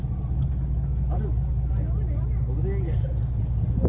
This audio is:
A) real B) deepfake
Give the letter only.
A